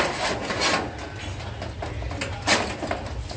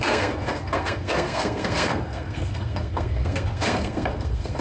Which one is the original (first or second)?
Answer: first